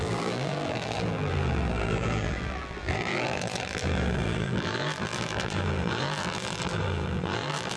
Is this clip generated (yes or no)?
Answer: yes